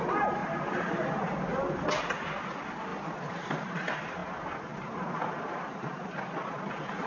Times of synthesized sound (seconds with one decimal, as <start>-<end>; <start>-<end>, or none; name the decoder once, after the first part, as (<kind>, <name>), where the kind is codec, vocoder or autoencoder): 2.9-3.5 (vocoder, BigVGAN v2)